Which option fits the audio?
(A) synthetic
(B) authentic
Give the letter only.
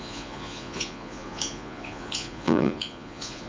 A